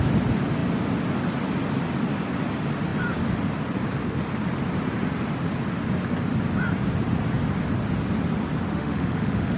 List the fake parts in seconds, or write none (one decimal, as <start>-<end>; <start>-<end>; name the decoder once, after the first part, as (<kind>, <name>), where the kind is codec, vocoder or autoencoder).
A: 8.7-9.6 (autoencoder, DAC-VAE)